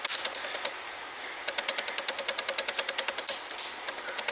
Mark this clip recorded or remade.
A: recorded